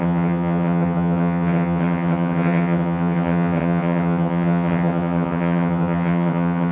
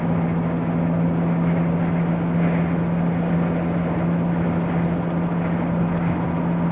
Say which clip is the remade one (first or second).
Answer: first